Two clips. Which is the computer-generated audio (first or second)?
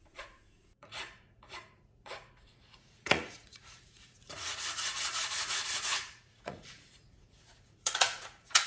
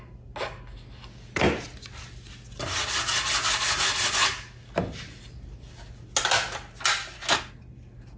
first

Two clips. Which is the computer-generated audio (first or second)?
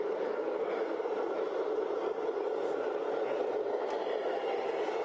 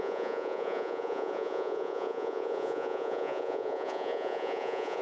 second